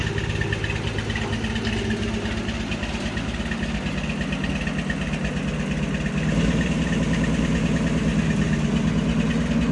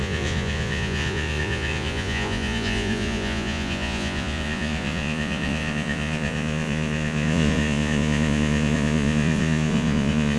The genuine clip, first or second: first